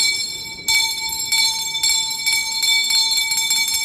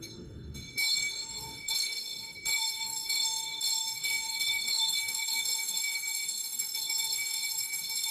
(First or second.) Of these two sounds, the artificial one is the second